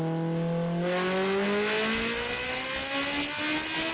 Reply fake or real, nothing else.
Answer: real